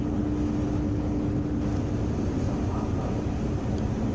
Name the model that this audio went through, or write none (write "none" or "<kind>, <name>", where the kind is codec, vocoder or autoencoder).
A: none